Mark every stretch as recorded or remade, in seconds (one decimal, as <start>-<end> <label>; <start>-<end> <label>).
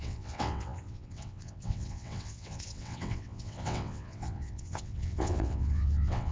0.0-6.3 remade